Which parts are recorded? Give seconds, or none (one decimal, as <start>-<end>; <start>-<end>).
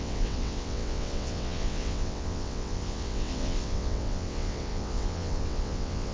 none